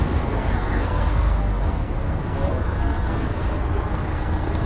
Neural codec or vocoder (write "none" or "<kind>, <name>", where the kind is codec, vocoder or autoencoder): codec, SNAC